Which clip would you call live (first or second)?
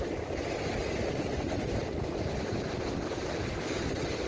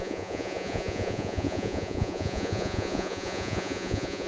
first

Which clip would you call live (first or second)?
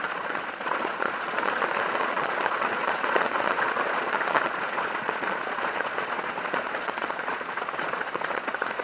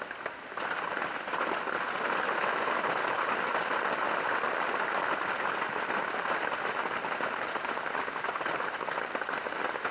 second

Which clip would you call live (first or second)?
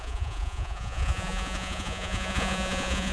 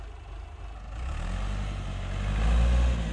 second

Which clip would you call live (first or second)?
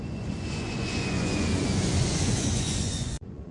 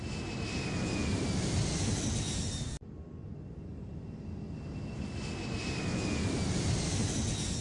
second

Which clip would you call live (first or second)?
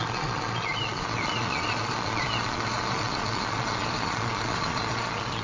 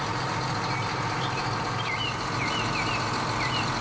second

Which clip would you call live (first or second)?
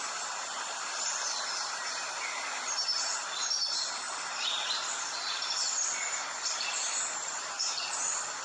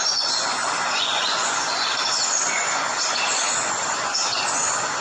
first